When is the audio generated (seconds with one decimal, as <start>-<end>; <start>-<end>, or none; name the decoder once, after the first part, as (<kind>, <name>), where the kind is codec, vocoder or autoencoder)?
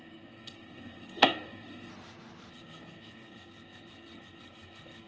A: 0.0-1.9 (codec, SNAC); 2.5-5.1